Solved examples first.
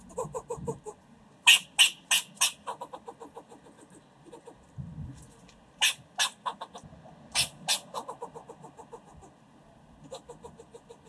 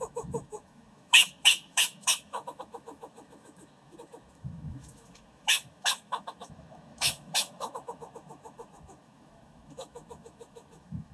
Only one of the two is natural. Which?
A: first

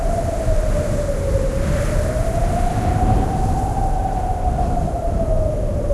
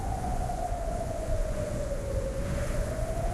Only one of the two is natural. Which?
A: first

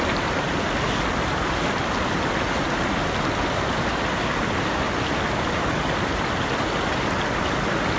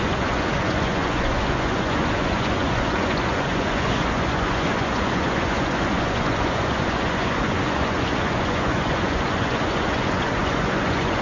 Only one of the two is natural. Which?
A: first